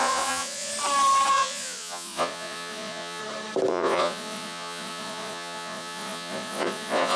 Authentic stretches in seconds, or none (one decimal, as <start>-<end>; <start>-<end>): 0.7-1.3; 3.2-3.7

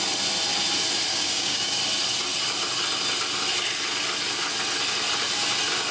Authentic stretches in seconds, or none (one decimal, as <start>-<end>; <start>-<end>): 0.0-1.1; 1.8-5.9

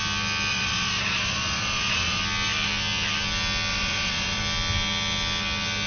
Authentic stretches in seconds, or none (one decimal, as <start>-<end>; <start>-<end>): 0.0-0.5; 2.2-3.7; 4.4-5.9

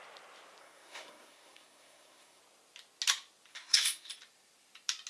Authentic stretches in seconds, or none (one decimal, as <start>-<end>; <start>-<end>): 0.0-0.6; 2.4-3.5; 4.1-5.1

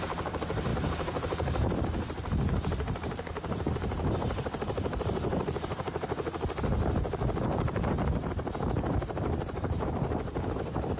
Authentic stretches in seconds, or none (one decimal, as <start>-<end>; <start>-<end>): none